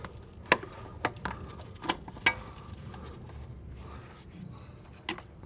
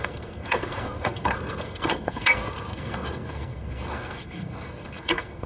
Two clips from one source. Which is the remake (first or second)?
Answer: second